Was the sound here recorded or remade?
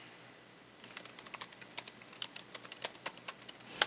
recorded